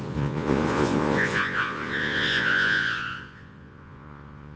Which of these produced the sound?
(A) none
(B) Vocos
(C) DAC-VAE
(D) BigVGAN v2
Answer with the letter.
B